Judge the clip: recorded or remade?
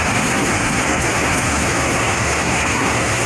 remade